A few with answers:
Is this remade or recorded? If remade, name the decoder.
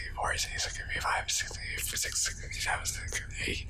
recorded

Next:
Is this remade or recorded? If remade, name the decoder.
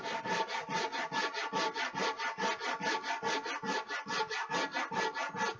recorded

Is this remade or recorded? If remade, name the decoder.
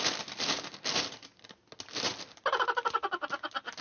recorded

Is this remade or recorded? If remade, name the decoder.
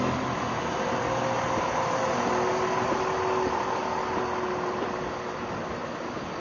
recorded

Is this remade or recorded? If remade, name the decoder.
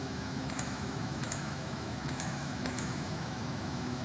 remade, autoencoder, DAC-VAE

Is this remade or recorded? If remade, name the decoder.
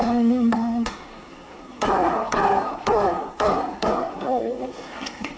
remade, codec, SNAC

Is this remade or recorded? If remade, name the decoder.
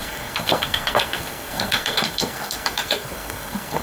remade, codec, SNAC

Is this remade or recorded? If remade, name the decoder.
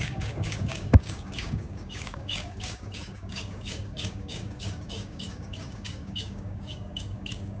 remade, codec, DAC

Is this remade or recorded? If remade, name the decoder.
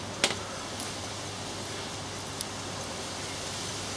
recorded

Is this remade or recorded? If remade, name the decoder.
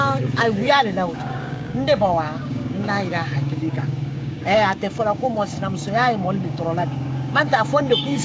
remade, codec, DAC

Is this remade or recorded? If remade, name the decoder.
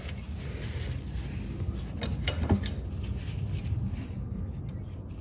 recorded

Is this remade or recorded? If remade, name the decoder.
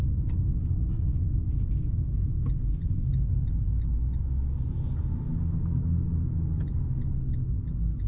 recorded